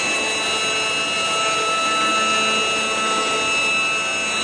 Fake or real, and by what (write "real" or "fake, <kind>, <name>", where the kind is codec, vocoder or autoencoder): real